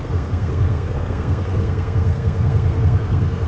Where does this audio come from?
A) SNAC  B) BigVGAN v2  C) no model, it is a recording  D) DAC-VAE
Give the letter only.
A